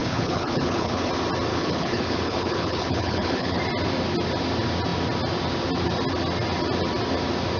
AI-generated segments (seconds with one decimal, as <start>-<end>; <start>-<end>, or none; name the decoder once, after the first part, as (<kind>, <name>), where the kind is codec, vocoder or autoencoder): 0.0-1.1 (codec, HILCodec); 1.5-3.6